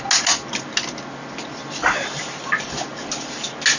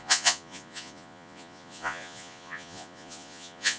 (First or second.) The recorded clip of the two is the first